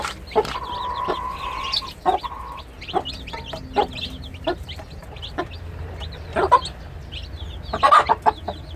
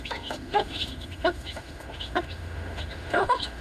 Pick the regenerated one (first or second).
second